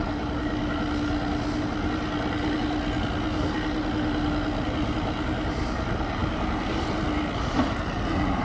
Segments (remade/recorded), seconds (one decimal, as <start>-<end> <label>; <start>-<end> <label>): 0.0-8.4 recorded